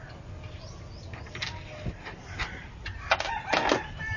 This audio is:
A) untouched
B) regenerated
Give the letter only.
A